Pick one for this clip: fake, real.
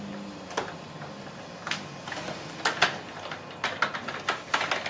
real